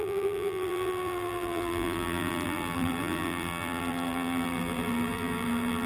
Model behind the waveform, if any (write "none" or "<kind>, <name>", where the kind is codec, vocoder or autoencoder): vocoder, BigVGAN v2